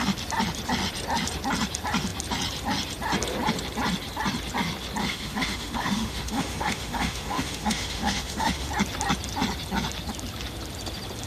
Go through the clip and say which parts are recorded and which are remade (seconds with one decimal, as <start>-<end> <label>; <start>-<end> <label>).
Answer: 0.0-5.0 recorded; 5.0-8.7 remade; 8.7-11.3 recorded